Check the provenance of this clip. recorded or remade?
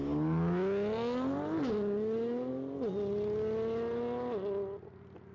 recorded